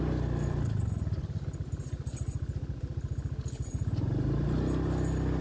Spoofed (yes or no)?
no